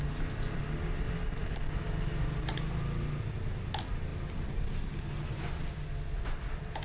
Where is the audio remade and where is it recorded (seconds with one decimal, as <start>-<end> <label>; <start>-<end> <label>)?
0.0-6.8 recorded